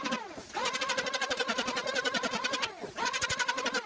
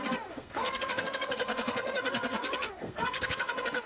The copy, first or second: second